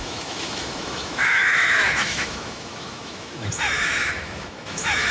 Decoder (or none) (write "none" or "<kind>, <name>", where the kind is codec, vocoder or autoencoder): autoencoder, DAC-VAE